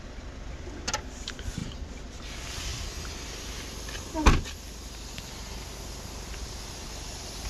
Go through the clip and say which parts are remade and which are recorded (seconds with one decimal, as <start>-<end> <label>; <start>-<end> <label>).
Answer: 0.0-7.5 recorded